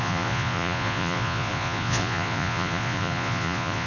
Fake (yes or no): yes